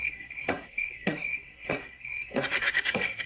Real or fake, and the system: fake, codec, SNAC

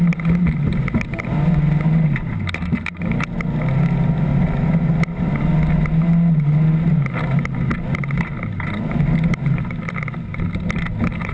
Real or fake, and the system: real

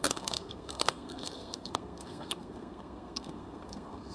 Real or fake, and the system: fake, codec, SNAC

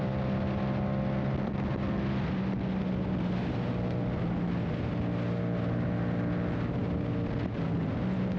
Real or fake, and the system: real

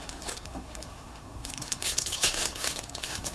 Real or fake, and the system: fake, codec, SNAC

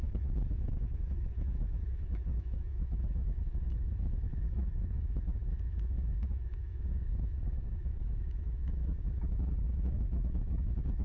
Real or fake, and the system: fake, autoencoder, DAC-VAE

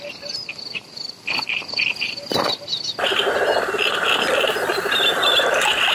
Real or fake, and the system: fake, vocoder, BigVGAN v2